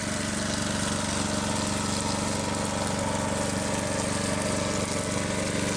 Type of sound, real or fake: real